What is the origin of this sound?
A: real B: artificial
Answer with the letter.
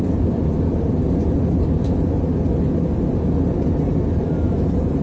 B